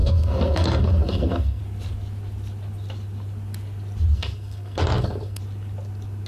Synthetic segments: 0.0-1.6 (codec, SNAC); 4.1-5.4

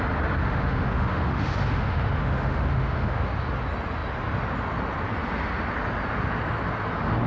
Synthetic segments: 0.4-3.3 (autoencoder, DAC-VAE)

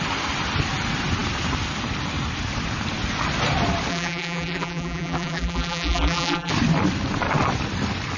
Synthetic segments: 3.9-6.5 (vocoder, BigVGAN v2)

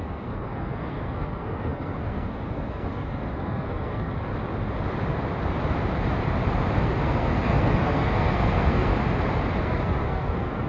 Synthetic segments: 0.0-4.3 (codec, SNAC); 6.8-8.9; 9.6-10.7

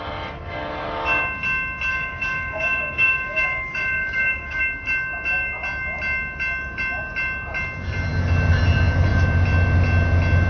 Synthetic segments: 1.9-4.6 (codec, DAC)